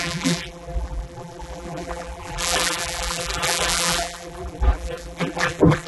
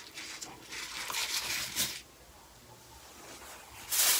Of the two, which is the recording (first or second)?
second